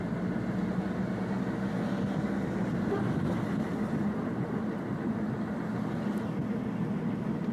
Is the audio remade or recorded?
recorded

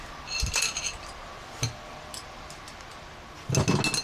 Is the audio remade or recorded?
recorded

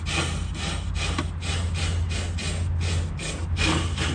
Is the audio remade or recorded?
recorded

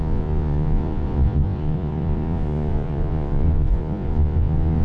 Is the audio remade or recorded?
remade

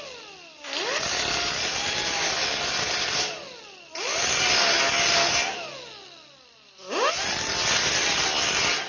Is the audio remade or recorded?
recorded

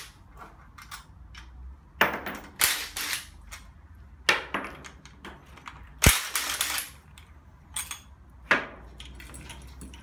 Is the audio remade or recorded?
recorded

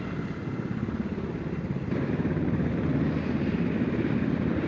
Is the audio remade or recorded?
recorded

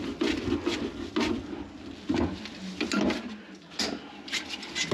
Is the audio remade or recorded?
recorded